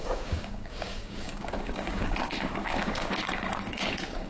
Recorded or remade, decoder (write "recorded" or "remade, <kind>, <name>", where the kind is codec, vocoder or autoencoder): remade, codec, DAC